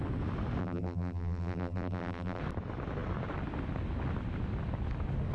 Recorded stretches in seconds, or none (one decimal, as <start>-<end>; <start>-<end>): 0.0-0.6; 2.4-5.3